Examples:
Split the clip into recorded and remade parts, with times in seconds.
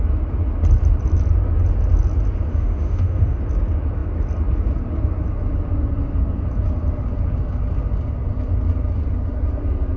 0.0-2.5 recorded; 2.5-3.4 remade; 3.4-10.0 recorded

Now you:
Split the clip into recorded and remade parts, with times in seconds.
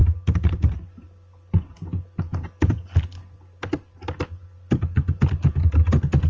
0.0-6.3 recorded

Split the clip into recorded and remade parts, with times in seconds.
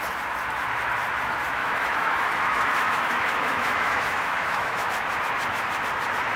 0.0-1.6 recorded; 1.6-4.9 remade; 4.9-6.4 recorded